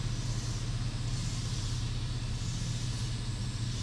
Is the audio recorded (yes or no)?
yes